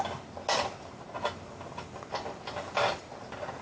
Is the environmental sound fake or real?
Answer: real